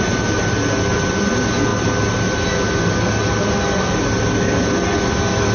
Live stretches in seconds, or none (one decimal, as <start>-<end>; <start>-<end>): 0.0-5.5